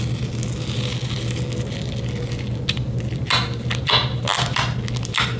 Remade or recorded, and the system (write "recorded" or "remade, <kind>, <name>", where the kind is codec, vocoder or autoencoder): recorded